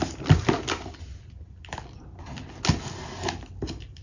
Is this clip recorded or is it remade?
recorded